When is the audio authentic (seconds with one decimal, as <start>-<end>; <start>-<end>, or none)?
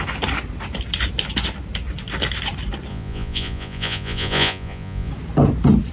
0.0-2.9; 5.1-5.9